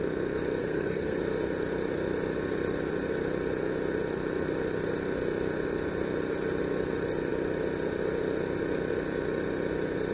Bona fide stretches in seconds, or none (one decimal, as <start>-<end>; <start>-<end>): 0.0-0.6; 1.2-10.1